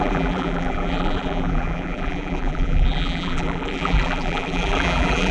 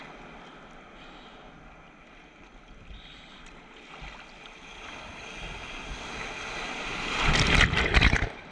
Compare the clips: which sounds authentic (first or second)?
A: second